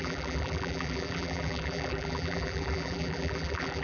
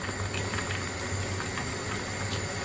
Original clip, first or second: second